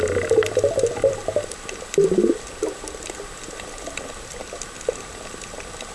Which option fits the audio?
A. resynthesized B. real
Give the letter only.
B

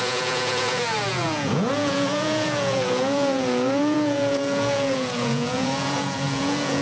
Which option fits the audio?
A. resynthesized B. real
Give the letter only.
A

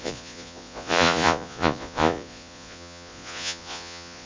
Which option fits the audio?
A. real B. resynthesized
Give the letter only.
B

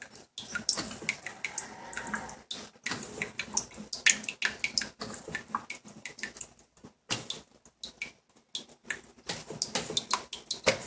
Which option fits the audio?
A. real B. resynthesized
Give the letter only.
A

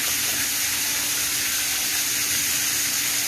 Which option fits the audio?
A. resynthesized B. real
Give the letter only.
B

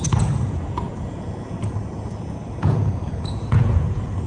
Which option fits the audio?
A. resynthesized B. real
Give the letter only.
A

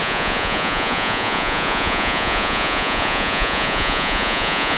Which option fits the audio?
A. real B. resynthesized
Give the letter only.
B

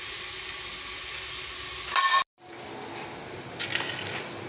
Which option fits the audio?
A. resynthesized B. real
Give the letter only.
B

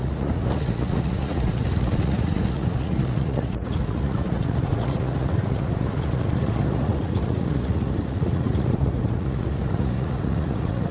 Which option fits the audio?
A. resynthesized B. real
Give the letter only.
A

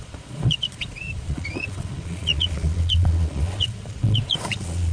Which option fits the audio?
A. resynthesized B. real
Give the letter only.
A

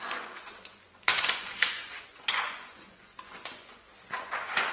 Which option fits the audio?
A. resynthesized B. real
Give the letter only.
A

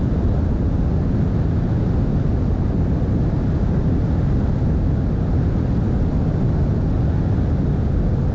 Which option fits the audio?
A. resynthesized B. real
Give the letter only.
B